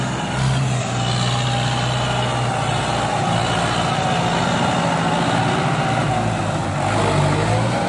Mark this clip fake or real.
real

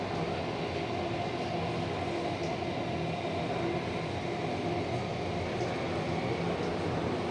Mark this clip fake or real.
real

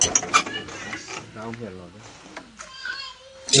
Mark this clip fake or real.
real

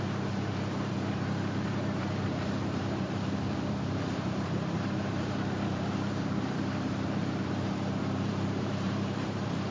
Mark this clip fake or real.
fake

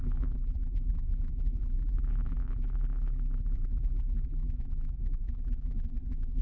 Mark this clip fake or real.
fake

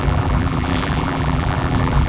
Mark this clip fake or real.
fake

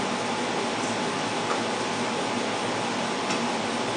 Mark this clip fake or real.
real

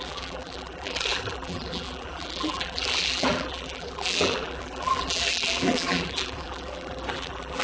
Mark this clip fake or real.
fake